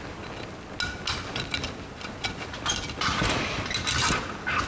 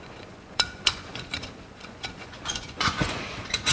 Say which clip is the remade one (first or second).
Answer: second